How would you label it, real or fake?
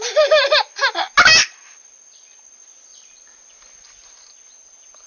real